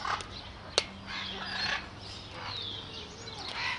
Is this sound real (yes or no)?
yes